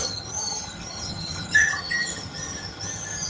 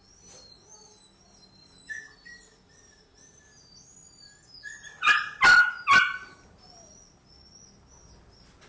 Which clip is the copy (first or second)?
first